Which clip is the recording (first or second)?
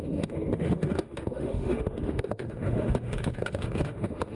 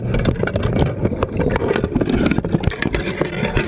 second